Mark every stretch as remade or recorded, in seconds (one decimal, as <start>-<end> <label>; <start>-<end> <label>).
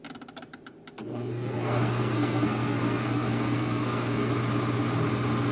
0.0-1.0 recorded; 1.0-4.3 remade; 4.3-5.5 recorded